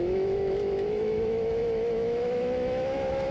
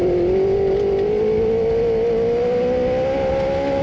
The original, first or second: second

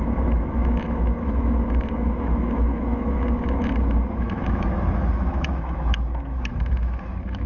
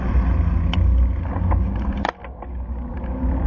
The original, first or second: second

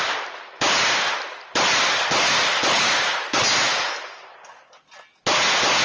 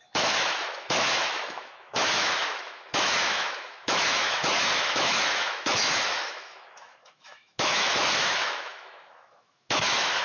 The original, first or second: first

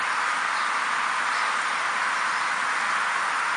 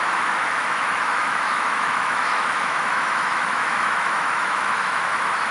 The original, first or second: first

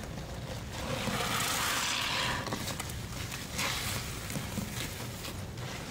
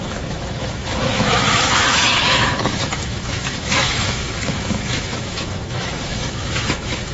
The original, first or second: first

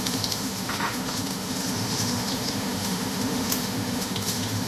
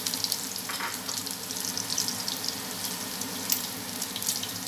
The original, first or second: second